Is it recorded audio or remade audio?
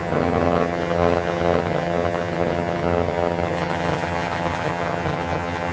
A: remade